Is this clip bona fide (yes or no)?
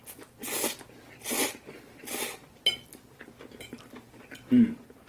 yes